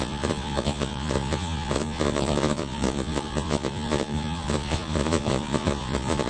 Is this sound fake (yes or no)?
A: yes